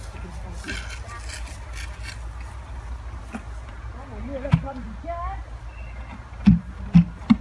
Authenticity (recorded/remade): recorded